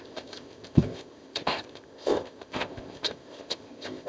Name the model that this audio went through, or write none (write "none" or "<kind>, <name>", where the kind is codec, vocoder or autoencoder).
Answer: codec, ZipCodec